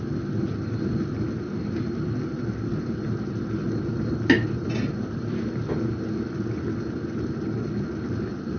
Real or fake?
real